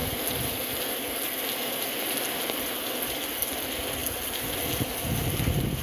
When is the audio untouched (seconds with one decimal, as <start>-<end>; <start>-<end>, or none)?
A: 0.0-5.8